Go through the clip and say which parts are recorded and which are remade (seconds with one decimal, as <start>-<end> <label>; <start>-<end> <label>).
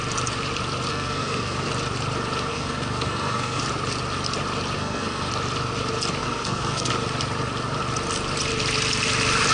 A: 0.0-0.9 recorded; 0.9-1.7 remade; 1.7-2.5 recorded; 2.5-3.6 remade; 3.6-4.8 recorded; 4.8-5.3 remade; 5.3-6.2 recorded; 6.2-6.9 remade; 6.9-9.5 recorded